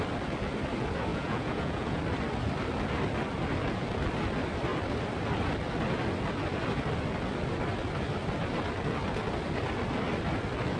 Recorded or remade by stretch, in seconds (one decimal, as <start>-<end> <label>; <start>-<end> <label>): 0.0-1.1 recorded; 1.1-2.0 remade; 2.0-10.8 recorded